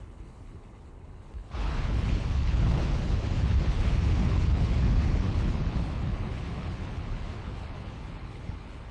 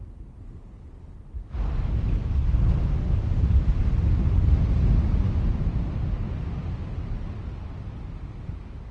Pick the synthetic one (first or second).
first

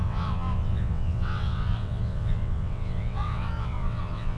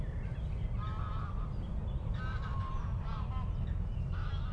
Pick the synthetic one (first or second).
first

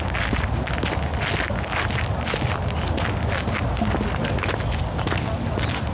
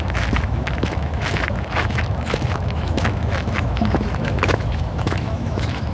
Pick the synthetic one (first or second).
second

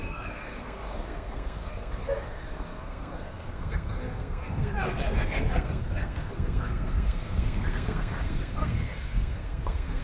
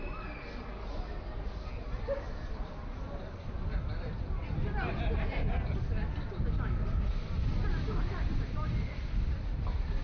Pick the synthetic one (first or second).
first